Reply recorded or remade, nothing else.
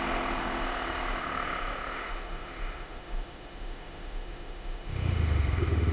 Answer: remade